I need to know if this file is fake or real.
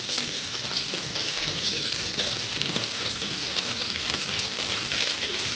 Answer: fake